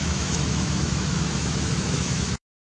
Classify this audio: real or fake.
fake